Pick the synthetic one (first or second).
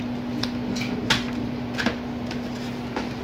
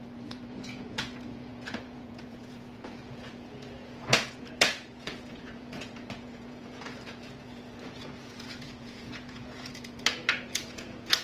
second